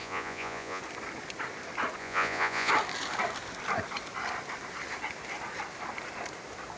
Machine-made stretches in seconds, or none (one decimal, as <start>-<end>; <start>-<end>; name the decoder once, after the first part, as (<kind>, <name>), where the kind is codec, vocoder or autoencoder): 0.0-0.8 (vocoder, Vocos); 2.0-2.7